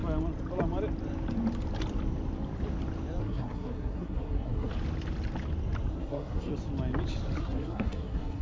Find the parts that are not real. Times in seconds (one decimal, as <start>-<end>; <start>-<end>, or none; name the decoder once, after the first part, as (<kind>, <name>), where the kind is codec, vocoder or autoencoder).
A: 3.2-4.7 (codec, SNAC); 5.9-6.5; 7.4-8.4